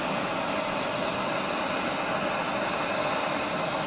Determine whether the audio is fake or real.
real